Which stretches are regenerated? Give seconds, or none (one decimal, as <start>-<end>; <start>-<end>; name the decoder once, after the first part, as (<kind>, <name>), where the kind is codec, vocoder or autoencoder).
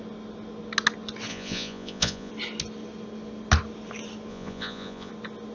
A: 1.3-2.3 (vocoder, Vocos); 4.3-5.1